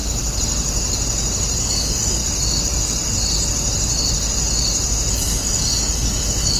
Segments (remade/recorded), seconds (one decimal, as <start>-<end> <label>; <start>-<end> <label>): 0.0-1.6 recorded; 1.6-2.2 remade; 2.2-5.1 recorded; 5.1-6.6 remade